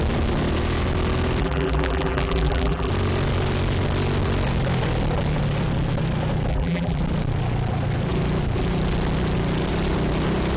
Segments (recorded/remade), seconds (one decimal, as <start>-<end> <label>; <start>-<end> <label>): 0.0-1.4 recorded; 1.4-2.9 remade; 2.9-6.5 recorded; 6.5-7.0 remade; 7.0-10.6 recorded